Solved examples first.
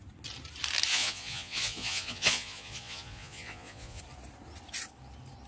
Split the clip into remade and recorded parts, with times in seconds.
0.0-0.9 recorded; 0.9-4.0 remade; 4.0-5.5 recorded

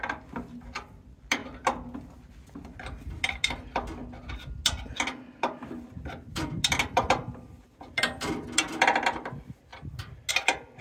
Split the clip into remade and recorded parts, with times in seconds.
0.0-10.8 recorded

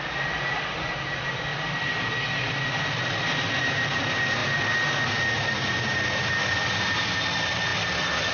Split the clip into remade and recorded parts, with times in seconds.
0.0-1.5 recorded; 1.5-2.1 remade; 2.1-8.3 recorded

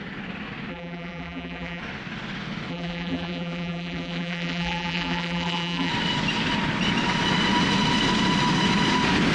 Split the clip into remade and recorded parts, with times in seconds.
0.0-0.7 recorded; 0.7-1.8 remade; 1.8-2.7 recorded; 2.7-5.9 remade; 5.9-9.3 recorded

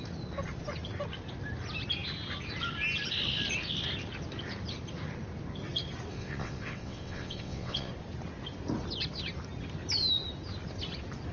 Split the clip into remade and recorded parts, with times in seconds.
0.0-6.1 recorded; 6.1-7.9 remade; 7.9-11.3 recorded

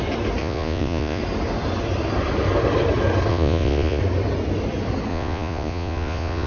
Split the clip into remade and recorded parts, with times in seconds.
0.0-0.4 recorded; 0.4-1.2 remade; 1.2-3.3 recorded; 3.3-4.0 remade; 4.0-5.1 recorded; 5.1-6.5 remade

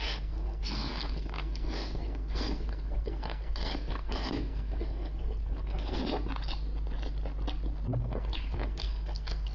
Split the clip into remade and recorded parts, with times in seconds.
0.0-6.0 remade; 6.0-8.0 recorded; 8.0-9.5 remade